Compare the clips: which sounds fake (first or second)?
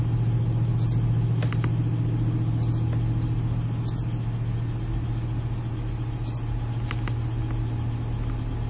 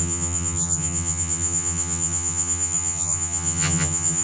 second